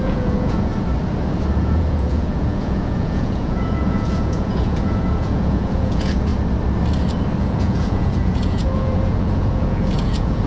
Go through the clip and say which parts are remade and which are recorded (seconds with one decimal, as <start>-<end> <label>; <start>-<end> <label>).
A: 0.0-0.7 remade; 0.7-1.6 recorded; 1.6-6.3 remade; 6.3-7.4 recorded; 7.4-10.5 remade